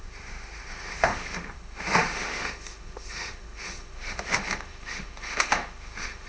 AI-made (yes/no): yes